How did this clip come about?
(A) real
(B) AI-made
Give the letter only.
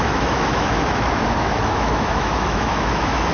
B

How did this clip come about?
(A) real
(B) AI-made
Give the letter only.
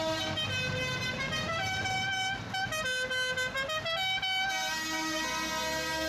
A